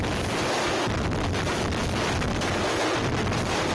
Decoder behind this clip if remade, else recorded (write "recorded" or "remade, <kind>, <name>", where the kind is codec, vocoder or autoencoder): recorded